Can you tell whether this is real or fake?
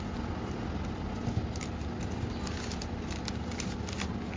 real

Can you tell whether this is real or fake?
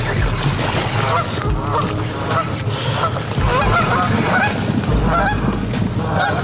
real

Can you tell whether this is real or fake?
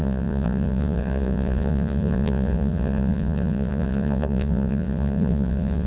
fake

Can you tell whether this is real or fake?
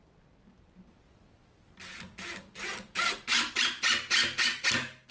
real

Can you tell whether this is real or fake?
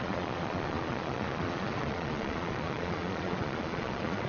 fake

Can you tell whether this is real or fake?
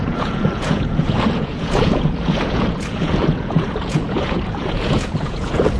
fake